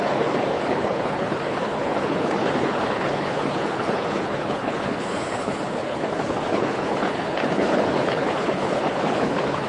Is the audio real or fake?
fake